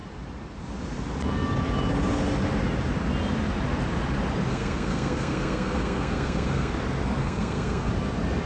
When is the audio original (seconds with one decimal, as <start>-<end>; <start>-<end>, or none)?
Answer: 0.0-4.5; 6.7-7.2; 7.9-8.5